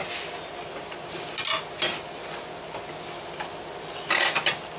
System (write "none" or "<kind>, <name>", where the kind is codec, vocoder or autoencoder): none